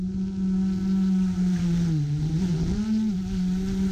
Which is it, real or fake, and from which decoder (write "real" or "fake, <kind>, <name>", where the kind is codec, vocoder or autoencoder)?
real